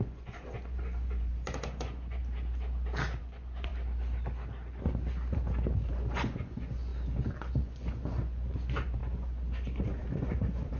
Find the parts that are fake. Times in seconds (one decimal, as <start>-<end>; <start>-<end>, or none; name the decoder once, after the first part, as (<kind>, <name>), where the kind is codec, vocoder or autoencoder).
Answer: 0.0-2.2 (vocoder, Vocos); 3.2-3.7; 5.9-6.9; 7.5-10.8